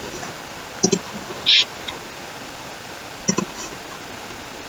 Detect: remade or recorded recorded